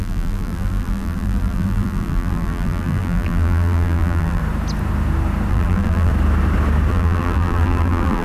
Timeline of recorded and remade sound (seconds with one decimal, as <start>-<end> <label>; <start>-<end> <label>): 0.0-4.4 remade; 4.4-5.5 recorded; 5.5-6.1 remade; 6.1-6.9 recorded; 6.9-8.2 remade